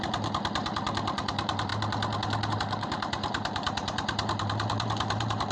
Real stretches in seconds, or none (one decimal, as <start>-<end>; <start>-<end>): 1.7-2.5